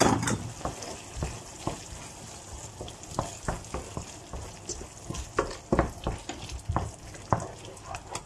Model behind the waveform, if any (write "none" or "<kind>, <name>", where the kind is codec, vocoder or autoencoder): none